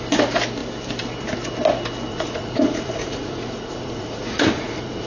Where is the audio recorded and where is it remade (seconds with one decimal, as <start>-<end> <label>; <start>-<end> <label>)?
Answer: 0.0-2.1 recorded; 2.1-5.1 remade